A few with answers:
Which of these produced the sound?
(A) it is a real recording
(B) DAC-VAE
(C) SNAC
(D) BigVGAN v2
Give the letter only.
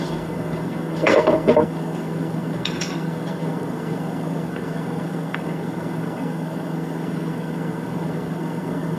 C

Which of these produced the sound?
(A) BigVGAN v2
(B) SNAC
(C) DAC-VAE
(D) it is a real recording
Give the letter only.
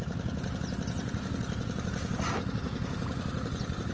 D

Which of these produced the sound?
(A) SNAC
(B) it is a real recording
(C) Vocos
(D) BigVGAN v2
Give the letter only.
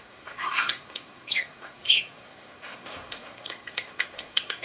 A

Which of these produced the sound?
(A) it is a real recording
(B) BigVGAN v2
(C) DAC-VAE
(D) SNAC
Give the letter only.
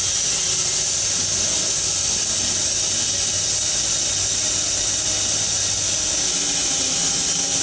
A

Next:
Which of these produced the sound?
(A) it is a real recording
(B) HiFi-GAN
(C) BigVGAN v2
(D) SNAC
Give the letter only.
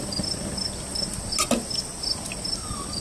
A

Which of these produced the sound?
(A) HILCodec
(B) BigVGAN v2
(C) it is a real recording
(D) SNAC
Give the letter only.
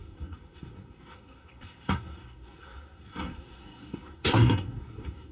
D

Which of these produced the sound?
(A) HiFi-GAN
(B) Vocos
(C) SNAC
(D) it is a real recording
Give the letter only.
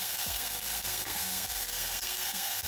C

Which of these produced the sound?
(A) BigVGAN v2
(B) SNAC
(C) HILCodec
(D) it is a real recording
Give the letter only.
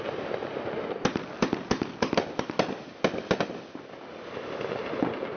D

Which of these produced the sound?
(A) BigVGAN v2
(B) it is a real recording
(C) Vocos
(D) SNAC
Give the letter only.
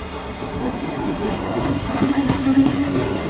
D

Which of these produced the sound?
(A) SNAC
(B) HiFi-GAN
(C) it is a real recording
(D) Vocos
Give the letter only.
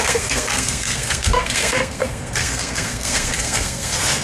A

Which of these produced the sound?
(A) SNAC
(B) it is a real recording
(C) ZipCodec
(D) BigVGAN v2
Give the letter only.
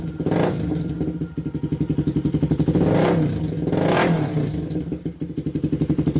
B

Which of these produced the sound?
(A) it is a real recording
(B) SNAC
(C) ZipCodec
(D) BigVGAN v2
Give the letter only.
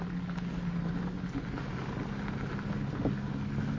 A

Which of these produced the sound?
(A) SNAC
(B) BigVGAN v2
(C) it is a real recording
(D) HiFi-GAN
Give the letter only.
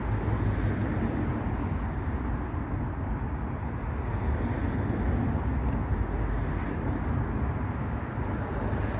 C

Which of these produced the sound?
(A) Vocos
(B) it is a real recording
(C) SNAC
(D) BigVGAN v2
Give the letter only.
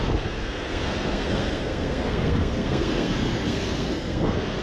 C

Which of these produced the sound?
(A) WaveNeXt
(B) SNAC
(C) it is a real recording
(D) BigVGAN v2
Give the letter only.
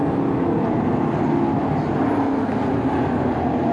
C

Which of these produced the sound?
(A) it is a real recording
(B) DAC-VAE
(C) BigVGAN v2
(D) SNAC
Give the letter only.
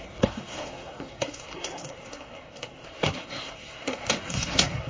D